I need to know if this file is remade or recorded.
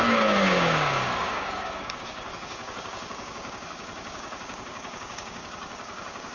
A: remade